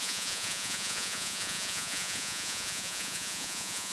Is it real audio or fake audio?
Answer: fake